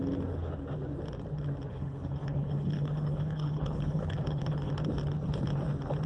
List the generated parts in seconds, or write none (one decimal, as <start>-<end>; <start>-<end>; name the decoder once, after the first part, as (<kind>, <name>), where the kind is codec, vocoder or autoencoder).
1.7-4.7 (codec, HILCodec)